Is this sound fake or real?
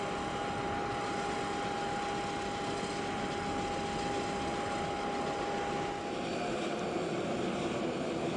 real